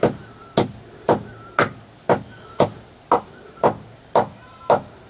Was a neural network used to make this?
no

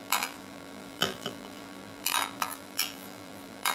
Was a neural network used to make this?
yes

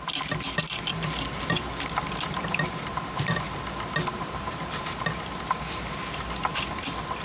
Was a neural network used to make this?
no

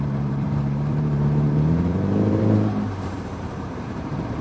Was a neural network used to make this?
yes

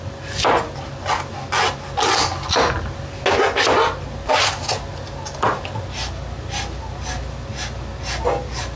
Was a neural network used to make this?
no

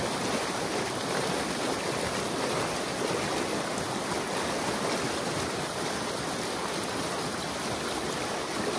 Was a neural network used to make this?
no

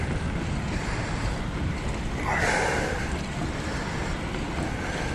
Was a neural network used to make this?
no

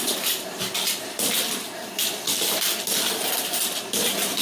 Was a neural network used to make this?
yes